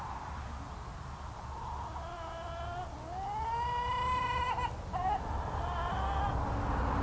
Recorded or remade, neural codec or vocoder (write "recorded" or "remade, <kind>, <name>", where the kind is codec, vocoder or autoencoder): recorded